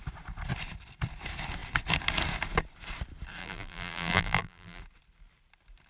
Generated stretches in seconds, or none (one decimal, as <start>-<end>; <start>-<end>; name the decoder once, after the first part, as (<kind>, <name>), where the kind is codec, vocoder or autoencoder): 3.4-4.8 (vocoder, BigVGAN v2)